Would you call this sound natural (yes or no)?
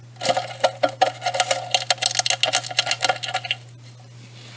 yes